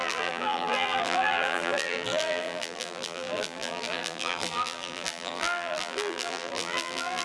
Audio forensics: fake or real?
fake